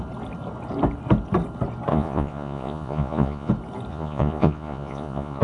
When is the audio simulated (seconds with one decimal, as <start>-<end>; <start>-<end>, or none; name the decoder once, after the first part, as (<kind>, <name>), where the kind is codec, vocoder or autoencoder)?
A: 1.9-3.5 (vocoder, Vocos); 3.9-5.4